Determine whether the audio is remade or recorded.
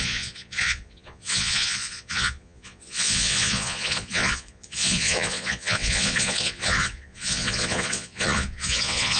remade